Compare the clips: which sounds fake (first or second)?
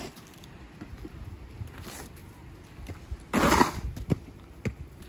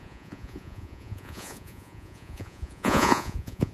second